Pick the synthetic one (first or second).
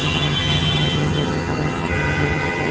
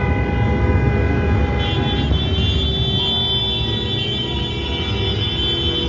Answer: first